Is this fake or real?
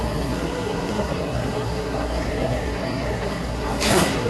fake